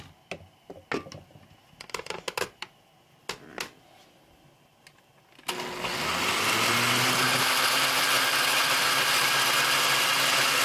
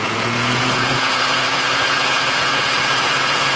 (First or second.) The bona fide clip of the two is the first